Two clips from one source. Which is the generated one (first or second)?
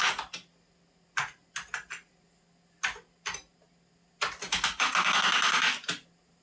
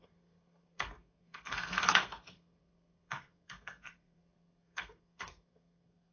second